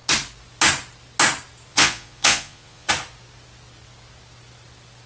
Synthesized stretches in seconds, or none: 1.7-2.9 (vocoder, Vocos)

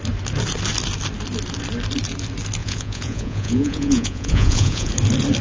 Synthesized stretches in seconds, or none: 2.6-4.9 (vocoder, Vocos)

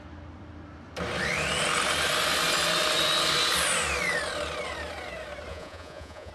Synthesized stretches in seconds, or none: 5.5-6.3 (vocoder, Vocos)

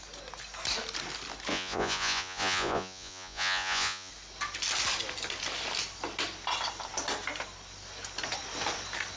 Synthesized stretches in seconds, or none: 1.5-4.1 (vocoder, Vocos)